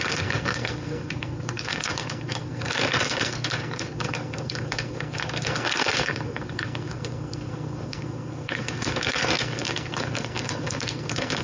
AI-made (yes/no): yes